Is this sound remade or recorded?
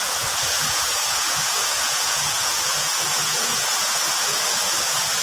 remade